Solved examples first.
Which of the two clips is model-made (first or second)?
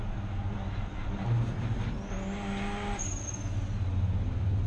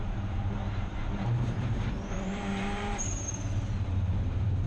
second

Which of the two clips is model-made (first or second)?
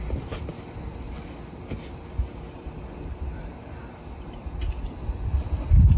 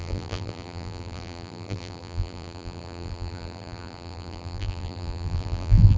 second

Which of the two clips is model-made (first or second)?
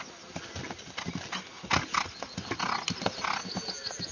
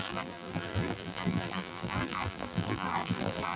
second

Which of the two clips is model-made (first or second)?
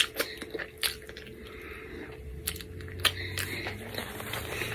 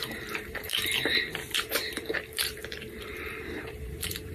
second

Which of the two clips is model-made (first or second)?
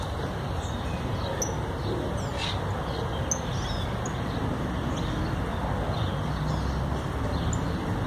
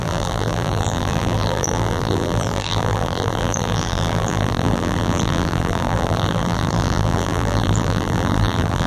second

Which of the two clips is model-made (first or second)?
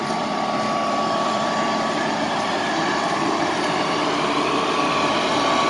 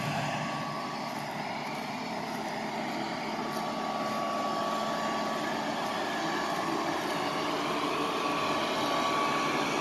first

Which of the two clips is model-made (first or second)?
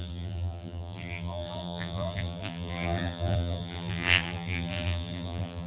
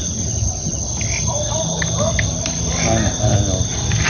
first